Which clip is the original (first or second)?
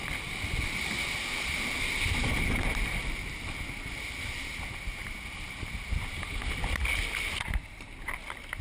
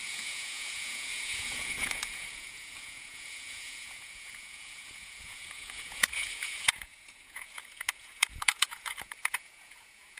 first